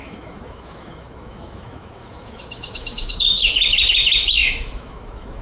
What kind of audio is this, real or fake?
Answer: fake